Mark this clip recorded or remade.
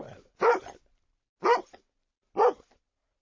recorded